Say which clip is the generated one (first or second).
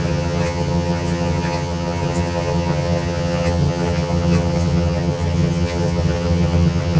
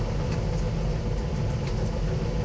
first